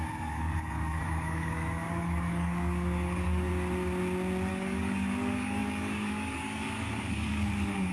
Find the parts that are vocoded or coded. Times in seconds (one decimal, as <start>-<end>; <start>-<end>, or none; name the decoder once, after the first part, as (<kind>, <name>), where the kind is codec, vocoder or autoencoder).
0.0-3.5 (codec, DAC); 4.5-7.9